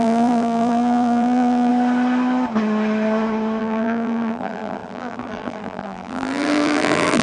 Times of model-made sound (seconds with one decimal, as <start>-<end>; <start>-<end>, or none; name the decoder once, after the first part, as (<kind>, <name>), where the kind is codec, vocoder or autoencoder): 0.0-1.7 (vocoder, BigVGAN v2); 3.6-7.2